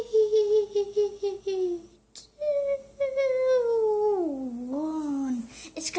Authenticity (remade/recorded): recorded